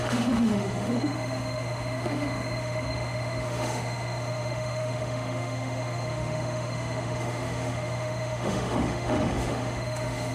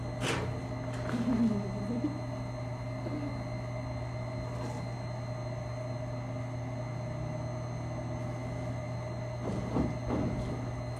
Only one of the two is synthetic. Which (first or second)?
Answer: first